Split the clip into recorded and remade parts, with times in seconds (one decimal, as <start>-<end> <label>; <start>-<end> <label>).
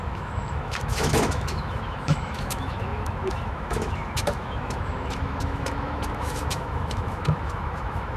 0.0-8.2 remade